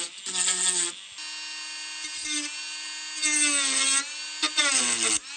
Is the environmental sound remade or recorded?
recorded